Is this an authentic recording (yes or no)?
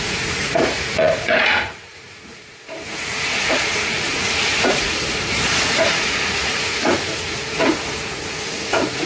no